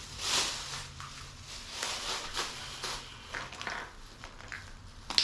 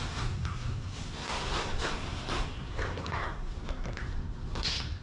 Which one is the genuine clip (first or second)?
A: first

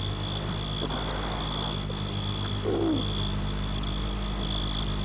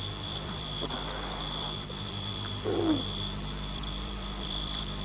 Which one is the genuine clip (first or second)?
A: first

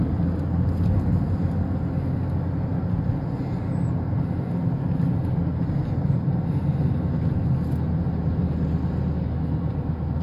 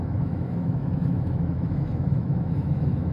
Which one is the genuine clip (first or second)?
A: first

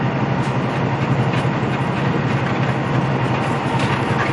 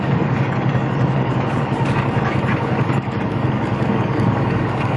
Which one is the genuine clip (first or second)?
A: first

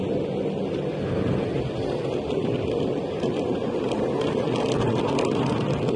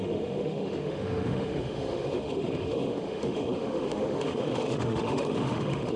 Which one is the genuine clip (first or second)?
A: first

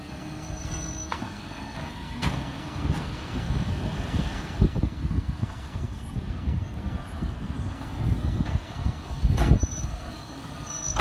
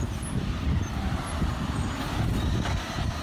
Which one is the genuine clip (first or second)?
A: second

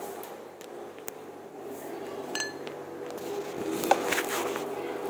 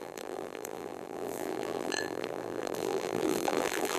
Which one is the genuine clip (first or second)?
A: first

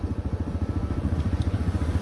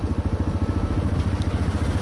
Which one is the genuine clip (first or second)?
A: second